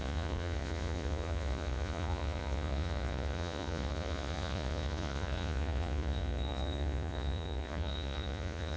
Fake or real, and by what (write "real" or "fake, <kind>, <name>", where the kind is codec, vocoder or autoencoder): fake, vocoder, Vocos